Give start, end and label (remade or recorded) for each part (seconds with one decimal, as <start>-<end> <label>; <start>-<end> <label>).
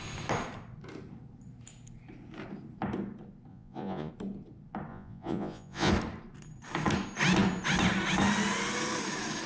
0.0-3.5 recorded; 3.5-4.1 remade; 4.1-4.9 recorded; 4.9-5.9 remade; 5.9-9.5 recorded